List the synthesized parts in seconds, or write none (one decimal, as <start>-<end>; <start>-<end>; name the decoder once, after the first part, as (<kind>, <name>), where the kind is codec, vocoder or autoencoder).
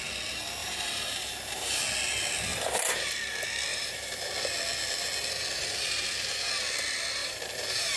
0.6-1.7 (vocoder, BigVGAN v2); 2.5-3.0; 3.7-4.3; 7.2-8.0